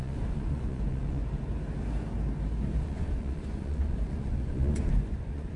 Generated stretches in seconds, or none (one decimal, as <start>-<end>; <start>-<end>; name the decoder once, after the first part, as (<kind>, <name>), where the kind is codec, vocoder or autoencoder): 0.0-1.2 (vocoder, Vocos); 2.8-5.6